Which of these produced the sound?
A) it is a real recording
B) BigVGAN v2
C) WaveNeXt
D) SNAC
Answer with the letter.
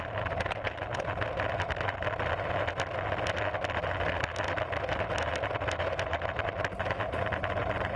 A